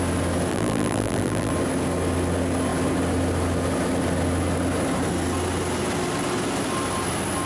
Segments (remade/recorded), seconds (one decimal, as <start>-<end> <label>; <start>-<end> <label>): 0.0-0.5 recorded; 0.5-1.5 remade; 1.5-7.5 recorded